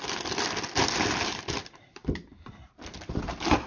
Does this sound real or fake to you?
real